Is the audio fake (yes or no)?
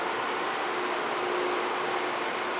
no